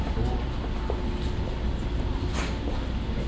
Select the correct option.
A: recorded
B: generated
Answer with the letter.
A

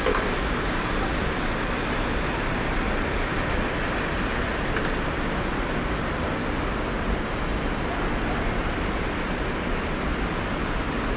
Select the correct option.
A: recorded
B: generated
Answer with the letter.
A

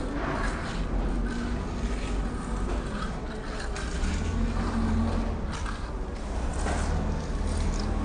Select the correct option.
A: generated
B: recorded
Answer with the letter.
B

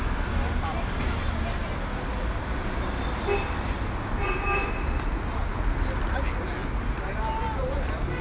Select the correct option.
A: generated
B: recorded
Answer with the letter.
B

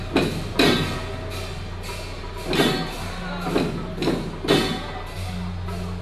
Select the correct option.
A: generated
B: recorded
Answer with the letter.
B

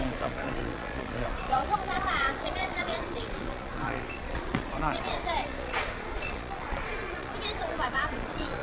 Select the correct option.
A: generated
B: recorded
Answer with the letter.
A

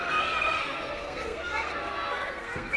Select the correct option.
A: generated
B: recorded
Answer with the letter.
A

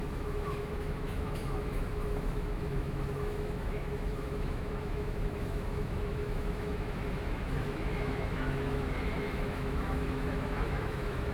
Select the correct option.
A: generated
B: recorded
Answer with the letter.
A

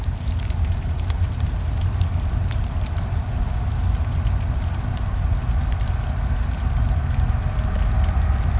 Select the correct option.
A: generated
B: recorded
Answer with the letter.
B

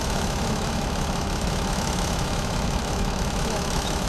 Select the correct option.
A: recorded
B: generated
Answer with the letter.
B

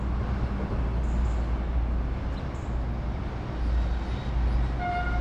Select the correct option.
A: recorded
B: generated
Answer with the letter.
A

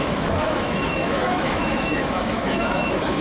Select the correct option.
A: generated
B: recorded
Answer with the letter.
A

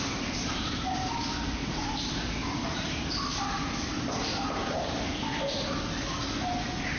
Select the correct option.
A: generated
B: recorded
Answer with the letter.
B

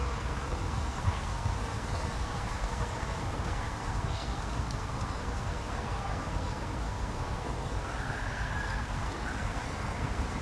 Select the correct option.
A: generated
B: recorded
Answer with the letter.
A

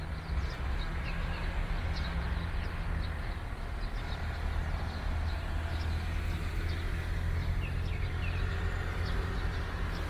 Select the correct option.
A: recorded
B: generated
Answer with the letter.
A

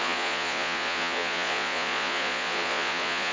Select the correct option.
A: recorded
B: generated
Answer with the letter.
B